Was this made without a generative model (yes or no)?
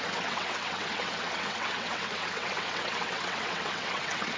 no